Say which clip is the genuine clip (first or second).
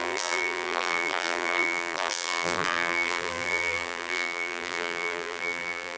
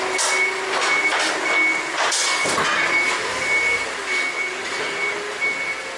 second